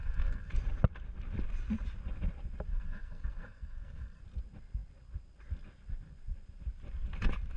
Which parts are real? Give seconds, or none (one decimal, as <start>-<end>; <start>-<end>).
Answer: 0.5-2.7; 4.2-7.6

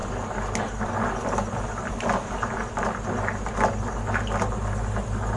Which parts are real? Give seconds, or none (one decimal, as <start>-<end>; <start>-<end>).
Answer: 0.0-5.4

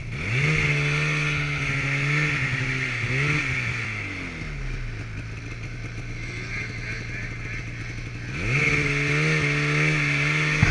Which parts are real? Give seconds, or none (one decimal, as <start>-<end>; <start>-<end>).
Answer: 0.0-10.7

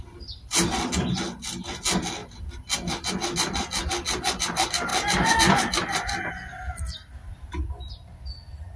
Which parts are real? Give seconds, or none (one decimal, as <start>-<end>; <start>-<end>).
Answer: 0.0-8.8